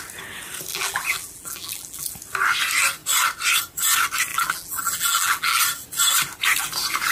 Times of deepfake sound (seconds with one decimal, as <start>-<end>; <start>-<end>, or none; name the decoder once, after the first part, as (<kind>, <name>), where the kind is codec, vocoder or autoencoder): 0.7-2.1 (vocoder, BigVGAN v2); 4.3-5.6